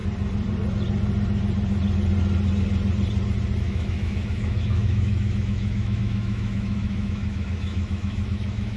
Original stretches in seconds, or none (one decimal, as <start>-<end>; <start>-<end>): 0.0-3.6